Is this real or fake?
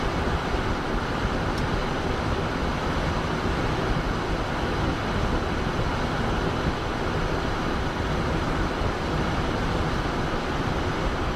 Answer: real